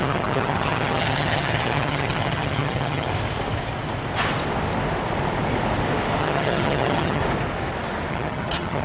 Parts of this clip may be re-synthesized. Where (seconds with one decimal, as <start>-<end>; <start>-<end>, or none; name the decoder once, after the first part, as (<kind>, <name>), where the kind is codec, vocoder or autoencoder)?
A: 0.0-3.1 (vocoder, HiFi-GAN); 6.2-7.2; 8.1-8.8